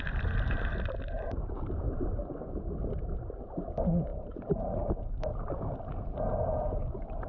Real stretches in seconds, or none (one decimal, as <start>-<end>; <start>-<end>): 0.0-4.1; 5.0-7.3